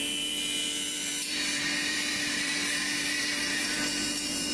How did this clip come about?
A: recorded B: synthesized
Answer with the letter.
B